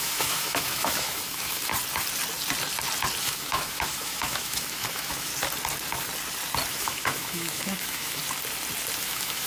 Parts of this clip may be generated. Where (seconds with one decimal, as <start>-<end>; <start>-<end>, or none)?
0.0-1.7; 3.2-5.3; 6.7-8.2; 9.0-9.5